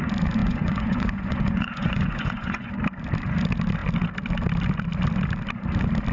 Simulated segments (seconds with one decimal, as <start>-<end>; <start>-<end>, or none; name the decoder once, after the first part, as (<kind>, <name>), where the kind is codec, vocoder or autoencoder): 0.4-2.7 (vocoder, Vocos)